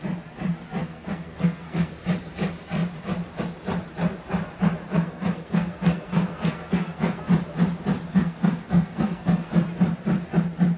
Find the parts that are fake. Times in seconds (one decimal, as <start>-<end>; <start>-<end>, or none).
0.8-1.9; 4.9-7.2; 8.1-9.5